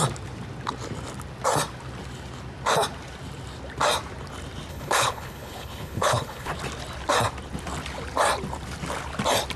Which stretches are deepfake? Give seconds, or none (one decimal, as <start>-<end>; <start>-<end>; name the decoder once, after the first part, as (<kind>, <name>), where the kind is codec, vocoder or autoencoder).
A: 4.7-6.5 (codec, HILCodec)